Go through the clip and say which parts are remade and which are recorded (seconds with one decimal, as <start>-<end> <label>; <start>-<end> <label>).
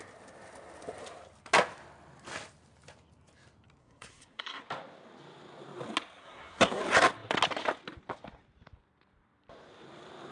0.0-3.8 recorded; 3.8-4.6 remade; 4.6-6.2 recorded; 6.2-6.8 remade; 6.8-10.3 recorded